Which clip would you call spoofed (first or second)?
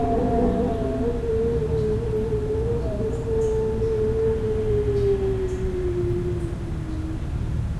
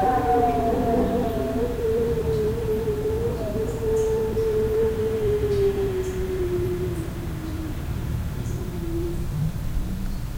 second